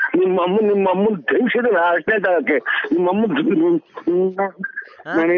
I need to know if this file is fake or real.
real